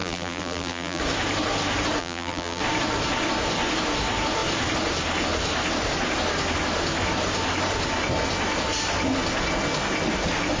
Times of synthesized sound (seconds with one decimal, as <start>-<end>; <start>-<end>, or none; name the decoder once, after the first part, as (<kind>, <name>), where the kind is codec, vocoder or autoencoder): 0.0-1.0 (vocoder, BigVGAN v2); 2.0-2.6